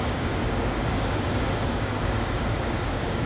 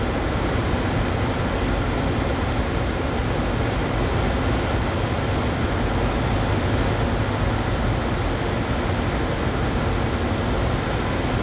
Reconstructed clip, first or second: first